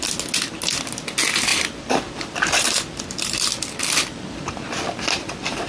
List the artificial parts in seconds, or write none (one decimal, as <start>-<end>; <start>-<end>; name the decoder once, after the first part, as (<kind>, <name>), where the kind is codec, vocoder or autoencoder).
1.5-4.6 (vocoder, BigVGAN v2)